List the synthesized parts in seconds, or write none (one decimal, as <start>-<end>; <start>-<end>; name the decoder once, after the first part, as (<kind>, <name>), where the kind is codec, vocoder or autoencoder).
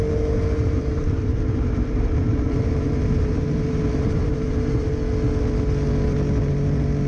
0.6-4.9 (vocoder, BigVGAN v2)